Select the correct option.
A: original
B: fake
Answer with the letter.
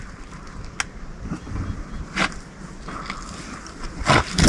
A